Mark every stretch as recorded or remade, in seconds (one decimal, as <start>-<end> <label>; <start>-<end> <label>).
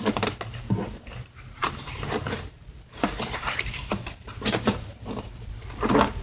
0.0-6.2 remade